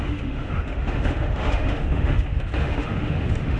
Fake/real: fake